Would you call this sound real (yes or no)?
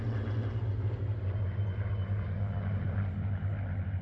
yes